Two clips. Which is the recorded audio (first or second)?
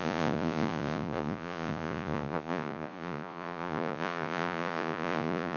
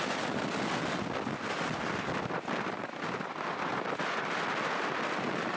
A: second